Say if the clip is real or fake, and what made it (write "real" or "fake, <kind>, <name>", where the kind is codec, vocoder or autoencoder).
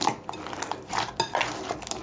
real